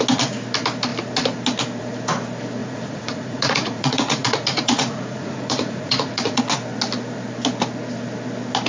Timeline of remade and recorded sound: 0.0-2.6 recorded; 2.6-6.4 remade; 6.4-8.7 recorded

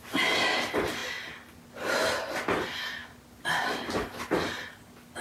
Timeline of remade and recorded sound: 0.0-5.2 recorded

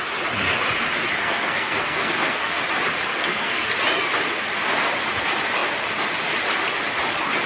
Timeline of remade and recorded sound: 0.0-1.2 recorded; 1.2-2.6 remade; 2.6-3.1 recorded; 3.1-3.7 remade; 3.7-7.5 recorded

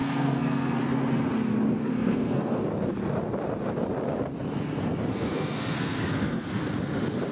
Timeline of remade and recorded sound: 0.0-0.8 remade; 0.8-1.8 recorded; 1.8-2.6 remade; 2.6-5.1 recorded; 5.1-6.6 remade; 6.6-7.3 recorded

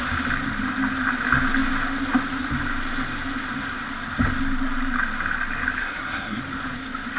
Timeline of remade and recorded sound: 0.0-5.8 recorded; 5.8-6.4 remade; 6.4-7.2 recorded

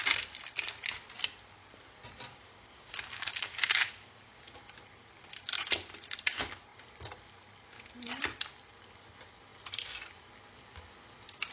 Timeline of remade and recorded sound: 0.0-2.3 recorded; 2.3-4.7 remade; 4.7-11.5 recorded

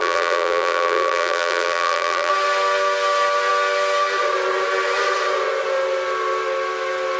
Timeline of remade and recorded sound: 0.0-2.3 remade; 2.3-7.2 recorded